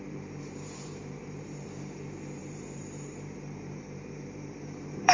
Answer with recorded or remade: remade